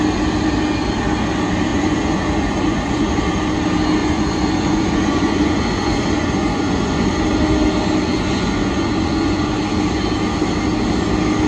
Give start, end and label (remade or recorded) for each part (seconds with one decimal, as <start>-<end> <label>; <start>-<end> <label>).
0.0-1.7 recorded; 1.7-3.2 remade; 3.2-4.0 recorded; 4.0-7.2 remade; 7.2-8.1 recorded; 8.1-9.6 remade; 9.6-11.5 recorded